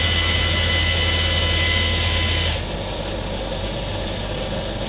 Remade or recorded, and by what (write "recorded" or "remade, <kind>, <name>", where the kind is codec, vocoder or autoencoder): recorded